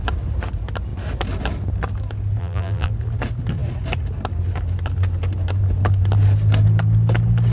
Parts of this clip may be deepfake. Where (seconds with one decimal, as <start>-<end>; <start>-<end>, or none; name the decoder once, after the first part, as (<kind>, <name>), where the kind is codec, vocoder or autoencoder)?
2.4-2.9 (vocoder, BigVGAN v2)